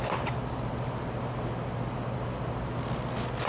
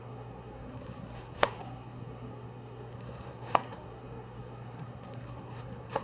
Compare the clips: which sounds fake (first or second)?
second